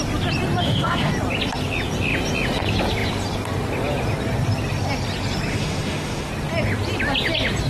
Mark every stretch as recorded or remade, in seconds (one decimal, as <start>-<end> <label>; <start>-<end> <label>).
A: 0.0-0.6 recorded; 0.6-1.1 remade; 1.1-5.5 recorded; 5.5-6.3 remade; 6.3-7.7 recorded